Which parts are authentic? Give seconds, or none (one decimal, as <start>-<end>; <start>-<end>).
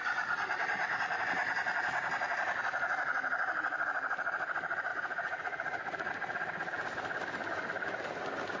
0.0-4.9; 6.1-8.6